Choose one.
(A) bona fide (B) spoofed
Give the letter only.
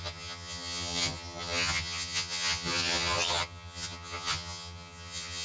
B